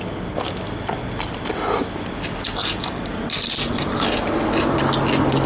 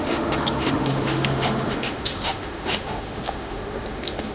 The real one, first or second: first